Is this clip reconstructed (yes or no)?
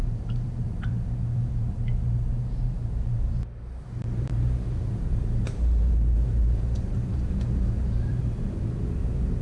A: yes